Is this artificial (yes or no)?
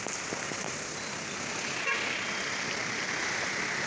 no